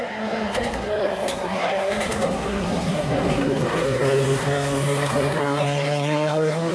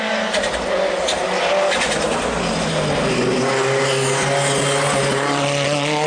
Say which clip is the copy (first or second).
first